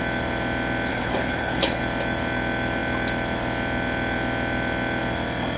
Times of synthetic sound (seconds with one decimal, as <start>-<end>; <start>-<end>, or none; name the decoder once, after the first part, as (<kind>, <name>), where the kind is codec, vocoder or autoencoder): 0.9-1.8 (codec, HILCodec)